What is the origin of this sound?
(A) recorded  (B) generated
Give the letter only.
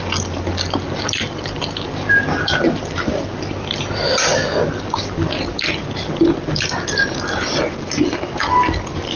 A